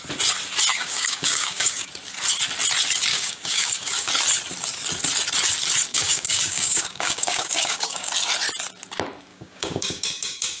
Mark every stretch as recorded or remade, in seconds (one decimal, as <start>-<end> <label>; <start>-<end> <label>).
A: 0.0-0.7 recorded; 0.7-1.9 remade; 1.9-3.1 recorded; 3.1-4.1 remade; 4.1-5.9 recorded; 5.9-8.1 remade; 8.1-9.3 recorded; 9.3-10.6 remade